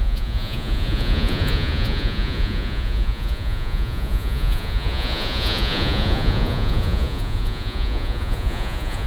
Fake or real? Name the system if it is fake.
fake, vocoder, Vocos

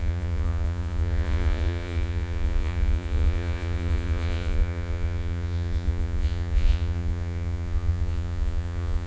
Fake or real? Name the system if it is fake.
fake, vocoder, Vocos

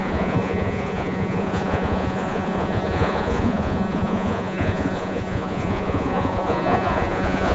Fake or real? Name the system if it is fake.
fake, vocoder, Vocos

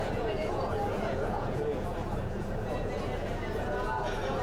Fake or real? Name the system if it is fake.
fake, vocoder, Vocos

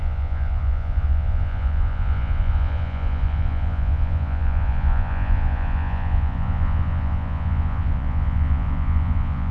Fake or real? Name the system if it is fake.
fake, vocoder, Vocos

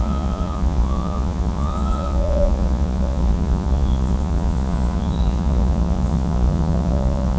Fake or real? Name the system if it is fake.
fake, vocoder, Vocos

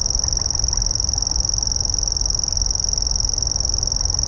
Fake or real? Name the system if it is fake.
real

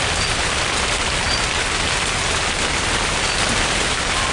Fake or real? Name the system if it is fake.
real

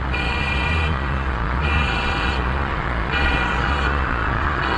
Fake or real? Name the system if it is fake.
fake, vocoder, Vocos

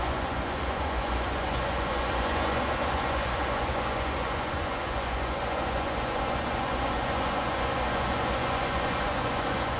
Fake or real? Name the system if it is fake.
fake, vocoder, Vocos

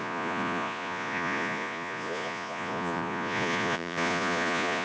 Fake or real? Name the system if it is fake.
fake, vocoder, Vocos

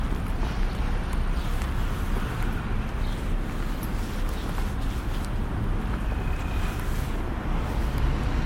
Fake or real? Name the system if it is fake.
real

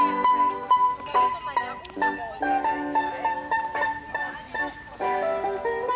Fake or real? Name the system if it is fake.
real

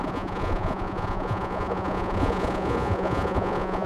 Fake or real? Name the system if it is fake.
fake, vocoder, Vocos